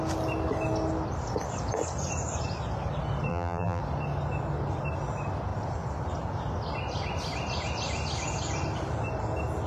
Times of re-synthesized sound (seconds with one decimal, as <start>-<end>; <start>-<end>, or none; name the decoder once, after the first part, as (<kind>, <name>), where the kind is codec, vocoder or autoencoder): 3.3-3.8 (vocoder, BigVGAN v2)